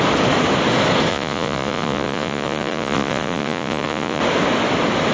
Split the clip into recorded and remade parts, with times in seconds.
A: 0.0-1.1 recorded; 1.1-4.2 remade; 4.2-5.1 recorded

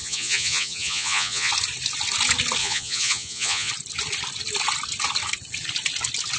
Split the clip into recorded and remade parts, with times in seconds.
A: 0.0-1.5 remade; 1.5-2.6 recorded; 2.6-3.7 remade; 3.7-6.4 recorded

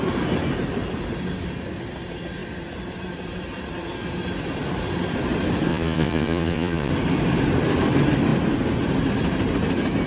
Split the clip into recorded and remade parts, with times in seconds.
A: 0.0-5.7 recorded; 5.7-6.9 remade; 6.9-10.1 recorded

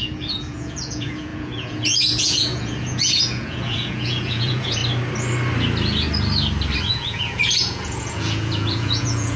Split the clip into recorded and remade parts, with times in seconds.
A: 0.0-4.8 remade; 4.8-6.9 recorded; 6.9-9.4 remade

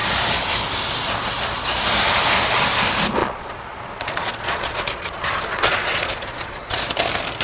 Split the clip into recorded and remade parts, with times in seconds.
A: 0.0-3.2 recorded; 3.2-6.8 remade; 6.8-7.4 recorded

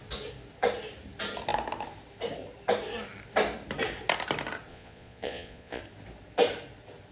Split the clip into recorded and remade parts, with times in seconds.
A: 0.0-4.7 recorded; 4.7-5.8 remade; 5.8-7.1 recorded

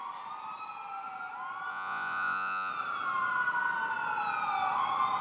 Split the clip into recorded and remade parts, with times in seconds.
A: 0.0-1.7 recorded; 1.7-2.7 remade; 2.7-5.2 recorded

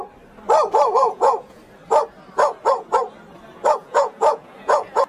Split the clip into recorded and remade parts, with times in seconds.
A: 0.0-1.0 recorded; 1.0-1.6 remade; 1.6-3.8 recorded; 3.8-5.1 remade